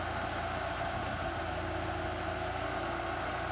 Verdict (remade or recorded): recorded